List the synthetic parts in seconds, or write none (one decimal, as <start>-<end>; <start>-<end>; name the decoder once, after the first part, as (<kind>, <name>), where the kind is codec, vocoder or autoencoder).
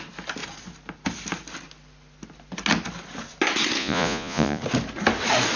3.8-4.6 (vocoder, Vocos)